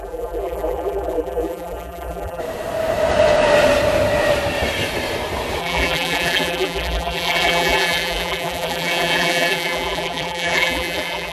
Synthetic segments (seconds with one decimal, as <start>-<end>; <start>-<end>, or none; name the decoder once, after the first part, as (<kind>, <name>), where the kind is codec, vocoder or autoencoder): 0.0-2.4 (vocoder, BigVGAN v2); 5.6-11.3